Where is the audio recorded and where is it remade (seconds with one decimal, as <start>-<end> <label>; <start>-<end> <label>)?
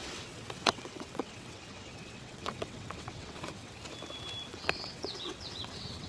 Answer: 0.0-3.7 remade; 3.7-4.5 recorded; 4.5-6.1 remade